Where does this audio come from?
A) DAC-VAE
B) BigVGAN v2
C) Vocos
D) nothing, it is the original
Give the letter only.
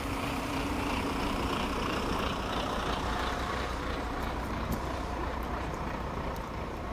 B